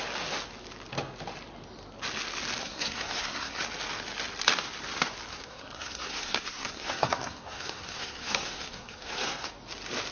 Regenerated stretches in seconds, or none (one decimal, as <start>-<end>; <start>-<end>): 2.6-3.6; 5.3-9.5